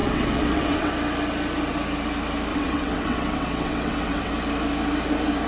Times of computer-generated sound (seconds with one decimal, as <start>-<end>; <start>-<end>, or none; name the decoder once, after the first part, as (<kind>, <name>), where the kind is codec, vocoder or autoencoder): 0.0-0.9 (vocoder, WaveNeXt); 2.5-4.3